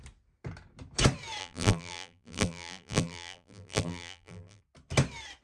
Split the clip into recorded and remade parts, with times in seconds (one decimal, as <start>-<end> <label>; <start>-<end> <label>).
0.0-1.4 recorded; 1.4-4.6 remade; 4.6-5.4 recorded